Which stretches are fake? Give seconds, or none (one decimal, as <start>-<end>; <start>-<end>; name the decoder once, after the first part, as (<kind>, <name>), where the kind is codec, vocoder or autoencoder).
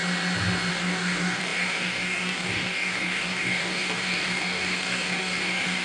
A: 0.7-5.8 (codec, DAC)